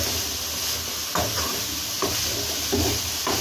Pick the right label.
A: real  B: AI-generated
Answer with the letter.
A